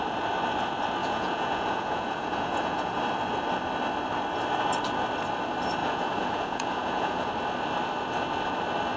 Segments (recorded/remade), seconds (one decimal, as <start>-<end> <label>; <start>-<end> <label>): 0.0-1.0 recorded; 1.0-3.0 remade; 3.0-5.8 recorded; 5.8-7.3 remade; 7.3-9.0 recorded